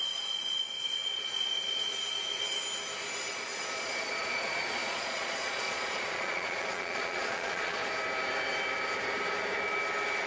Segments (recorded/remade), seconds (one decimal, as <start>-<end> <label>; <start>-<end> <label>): 0.0-2.0 remade; 2.0-3.3 recorded; 3.3-7.8 remade; 7.8-10.3 recorded